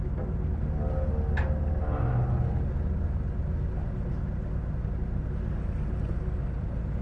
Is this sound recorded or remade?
recorded